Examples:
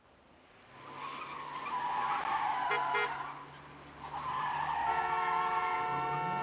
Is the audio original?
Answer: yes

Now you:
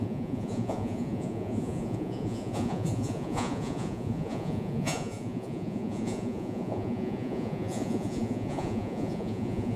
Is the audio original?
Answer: no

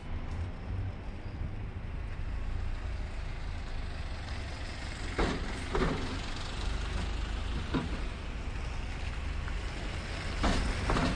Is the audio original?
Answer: yes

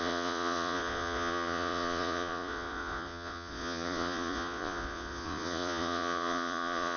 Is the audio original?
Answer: no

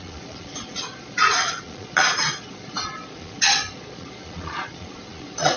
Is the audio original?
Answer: no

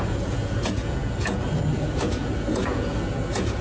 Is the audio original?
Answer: no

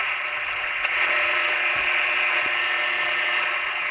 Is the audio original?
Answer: no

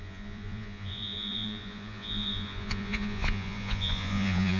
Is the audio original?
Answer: no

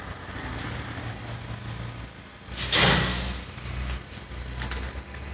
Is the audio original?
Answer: yes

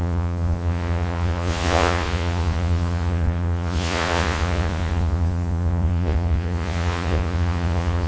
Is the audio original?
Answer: no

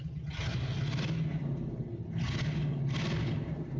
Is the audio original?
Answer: yes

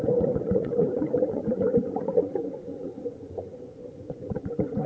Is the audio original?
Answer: no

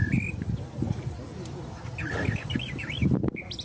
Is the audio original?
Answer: yes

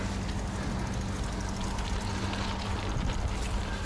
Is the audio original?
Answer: yes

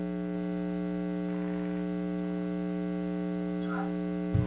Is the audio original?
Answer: yes